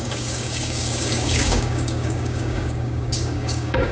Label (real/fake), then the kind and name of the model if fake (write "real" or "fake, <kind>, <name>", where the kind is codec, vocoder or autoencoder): fake, codec, DAC